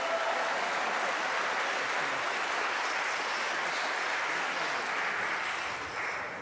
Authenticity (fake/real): real